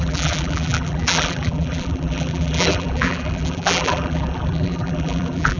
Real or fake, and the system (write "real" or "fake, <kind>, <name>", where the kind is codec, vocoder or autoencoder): fake, vocoder, BigVGAN v2